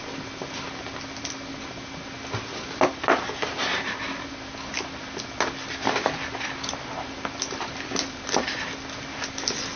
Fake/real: real